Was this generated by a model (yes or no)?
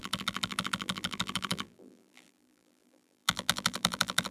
yes